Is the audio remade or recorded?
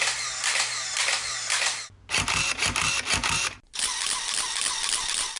recorded